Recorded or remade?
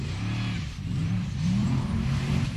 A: remade